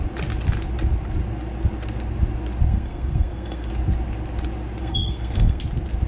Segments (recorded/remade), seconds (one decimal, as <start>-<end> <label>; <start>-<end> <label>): 0.0-2.7 recorded; 2.7-3.7 remade; 3.7-4.8 recorded; 4.8-5.6 remade; 5.6-6.1 recorded